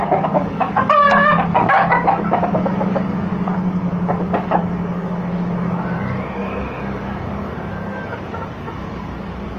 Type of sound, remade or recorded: remade